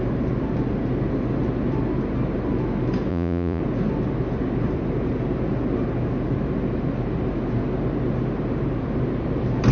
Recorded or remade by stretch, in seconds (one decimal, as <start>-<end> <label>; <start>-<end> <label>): 0.0-3.1 recorded; 3.1-3.6 remade; 3.6-9.7 recorded